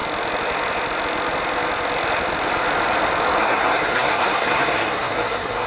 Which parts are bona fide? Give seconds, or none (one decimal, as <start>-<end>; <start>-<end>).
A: 0.0-3.4